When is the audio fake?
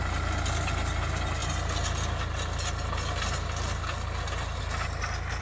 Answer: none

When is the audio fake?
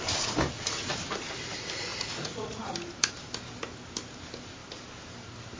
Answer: 1.9-2.7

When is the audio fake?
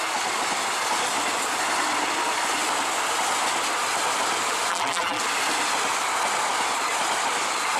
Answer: 4.7-5.2